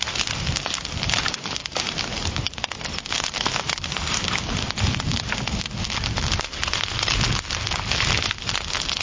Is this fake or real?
real